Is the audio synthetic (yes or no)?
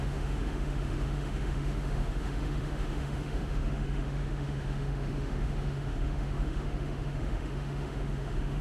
yes